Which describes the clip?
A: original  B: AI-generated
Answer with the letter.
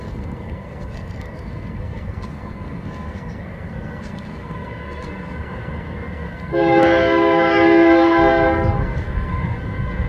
B